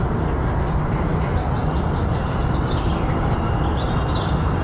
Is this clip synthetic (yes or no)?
no